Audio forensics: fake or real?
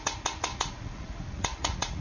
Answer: fake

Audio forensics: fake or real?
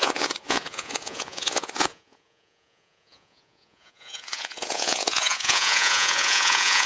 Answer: fake